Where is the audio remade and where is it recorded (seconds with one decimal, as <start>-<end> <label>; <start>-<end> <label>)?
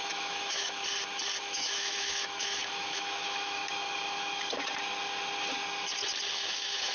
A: 0.0-0.8 remade; 0.8-1.4 recorded; 1.4-3.6 remade; 3.6-6.3 recorded; 6.3-6.9 remade